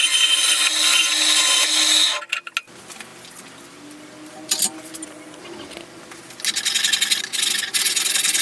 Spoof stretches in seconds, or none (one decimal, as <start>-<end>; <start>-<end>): none